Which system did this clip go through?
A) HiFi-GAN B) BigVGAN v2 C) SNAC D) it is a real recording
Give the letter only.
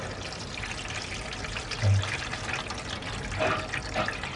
D